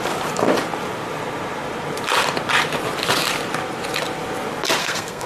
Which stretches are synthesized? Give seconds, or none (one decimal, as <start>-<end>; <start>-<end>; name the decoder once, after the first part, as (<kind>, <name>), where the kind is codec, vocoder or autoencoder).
4.8-5.3 (codec, SNAC)